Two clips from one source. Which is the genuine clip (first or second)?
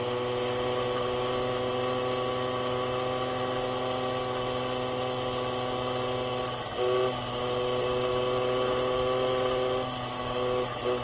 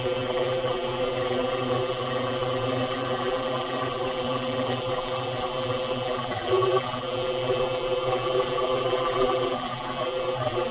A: first